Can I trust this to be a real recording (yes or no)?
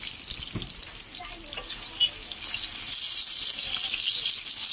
yes